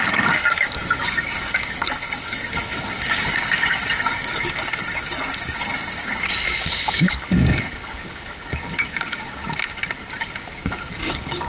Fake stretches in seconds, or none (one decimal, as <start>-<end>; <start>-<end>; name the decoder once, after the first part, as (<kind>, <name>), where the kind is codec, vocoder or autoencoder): 0.0-9.4 (codec, DAC); 10.2-11.5